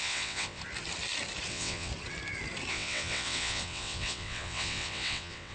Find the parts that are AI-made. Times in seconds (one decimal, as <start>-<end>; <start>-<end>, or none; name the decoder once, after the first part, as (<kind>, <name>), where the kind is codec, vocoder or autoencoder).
0.0-0.6 (vocoder, WaveNeXt); 1.5-1.9; 2.7-5.5